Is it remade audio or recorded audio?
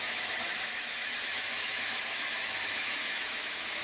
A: remade